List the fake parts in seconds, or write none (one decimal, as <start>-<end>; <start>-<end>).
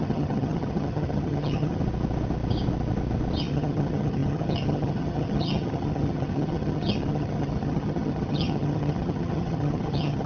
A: 0.0-1.8; 3.4-10.3